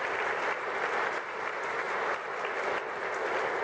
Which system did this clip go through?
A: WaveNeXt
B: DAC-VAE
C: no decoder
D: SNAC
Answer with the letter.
C